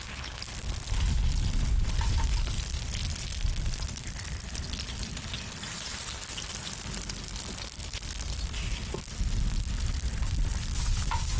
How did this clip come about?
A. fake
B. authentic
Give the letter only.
B